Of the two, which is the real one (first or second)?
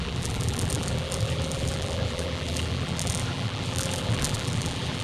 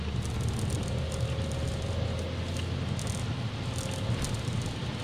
second